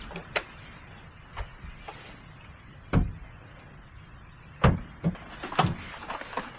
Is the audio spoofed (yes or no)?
no